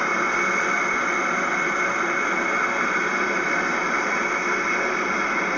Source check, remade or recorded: recorded